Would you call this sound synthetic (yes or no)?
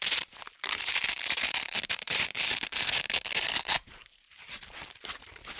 yes